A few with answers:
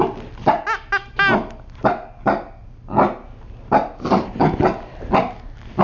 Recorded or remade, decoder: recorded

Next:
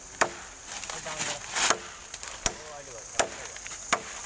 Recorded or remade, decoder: recorded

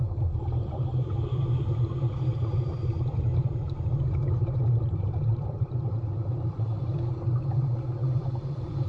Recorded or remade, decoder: remade, vocoder, BigVGAN v2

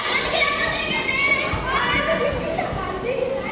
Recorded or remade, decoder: recorded